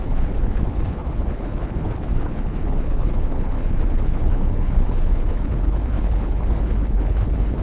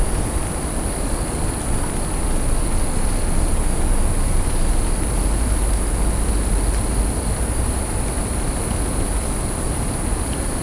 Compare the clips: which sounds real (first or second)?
second